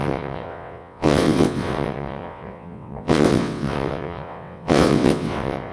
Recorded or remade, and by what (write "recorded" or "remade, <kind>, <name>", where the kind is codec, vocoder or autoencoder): remade, vocoder, WaveNeXt